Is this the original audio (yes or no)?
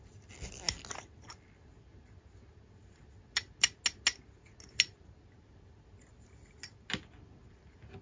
yes